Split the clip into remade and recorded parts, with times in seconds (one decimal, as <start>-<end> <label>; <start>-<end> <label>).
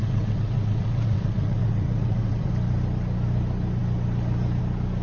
0.0-2.5 remade; 2.5-5.0 recorded